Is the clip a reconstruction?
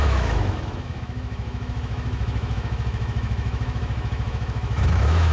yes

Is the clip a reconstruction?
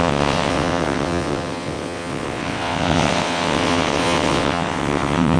yes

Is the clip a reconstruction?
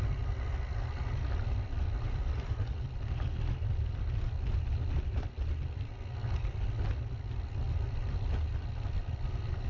no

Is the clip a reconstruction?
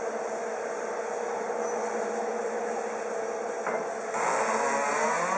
no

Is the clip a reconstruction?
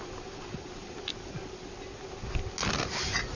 no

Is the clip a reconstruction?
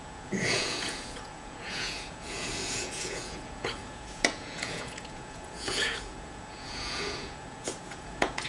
yes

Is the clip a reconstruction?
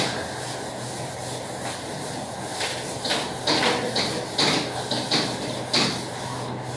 no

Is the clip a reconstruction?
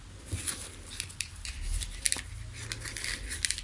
no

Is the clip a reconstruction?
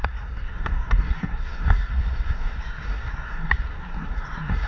yes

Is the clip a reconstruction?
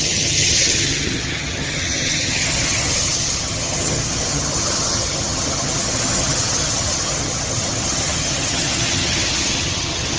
yes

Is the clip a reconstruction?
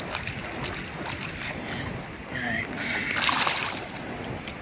no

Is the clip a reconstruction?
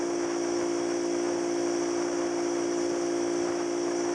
no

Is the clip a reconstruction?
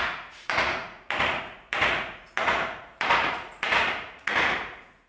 yes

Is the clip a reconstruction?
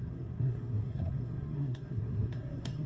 yes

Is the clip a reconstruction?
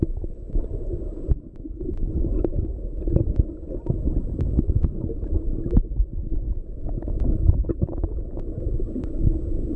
no